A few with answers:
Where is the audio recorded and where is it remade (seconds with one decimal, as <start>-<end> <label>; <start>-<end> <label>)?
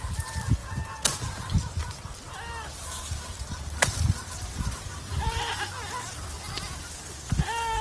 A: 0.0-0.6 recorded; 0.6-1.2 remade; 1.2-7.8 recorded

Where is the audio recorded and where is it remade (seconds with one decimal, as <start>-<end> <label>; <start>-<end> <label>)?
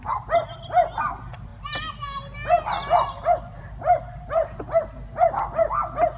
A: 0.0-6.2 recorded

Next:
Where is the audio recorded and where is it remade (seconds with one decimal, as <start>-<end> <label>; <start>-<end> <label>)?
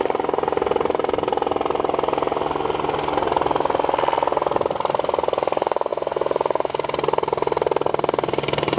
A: 0.0-8.8 recorded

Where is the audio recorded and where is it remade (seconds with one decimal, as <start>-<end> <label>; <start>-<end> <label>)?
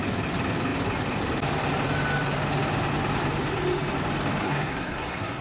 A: 0.0-4.4 recorded; 4.4-5.4 remade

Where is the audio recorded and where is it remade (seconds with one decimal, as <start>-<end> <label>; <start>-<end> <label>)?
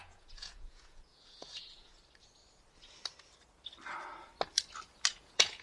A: 0.0-1.9 remade; 1.9-5.1 recorded; 5.1-5.6 remade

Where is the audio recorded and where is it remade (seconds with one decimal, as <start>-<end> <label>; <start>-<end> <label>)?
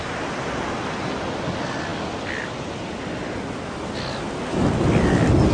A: 0.0-5.5 recorded